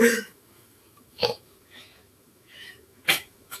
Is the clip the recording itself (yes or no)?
no